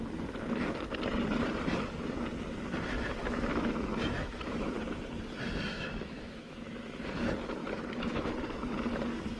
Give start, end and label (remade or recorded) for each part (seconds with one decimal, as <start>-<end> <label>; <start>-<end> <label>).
0.0-3.2 recorded; 3.2-4.7 remade; 4.7-5.7 recorded; 5.7-7.0 remade; 7.0-7.6 recorded; 7.6-8.3 remade; 8.3-9.4 recorded